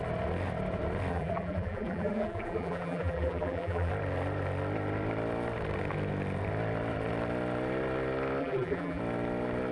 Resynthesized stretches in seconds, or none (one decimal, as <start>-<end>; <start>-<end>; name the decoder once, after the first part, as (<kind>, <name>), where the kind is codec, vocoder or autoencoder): 1.1-3.9 (vocoder, BigVGAN v2); 8.4-9.0